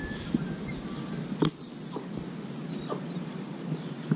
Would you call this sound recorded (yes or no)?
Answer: yes